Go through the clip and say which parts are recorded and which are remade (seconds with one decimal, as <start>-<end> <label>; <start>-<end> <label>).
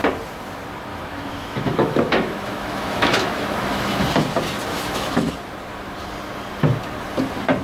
0.0-0.9 recorded; 0.9-4.0 remade; 4.0-4.7 recorded; 4.7-5.3 remade; 5.3-7.6 recorded